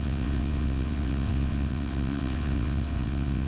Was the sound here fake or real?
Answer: fake